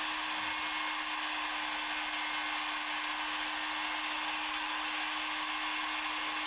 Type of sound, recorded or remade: recorded